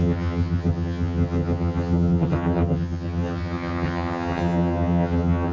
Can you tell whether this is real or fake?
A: fake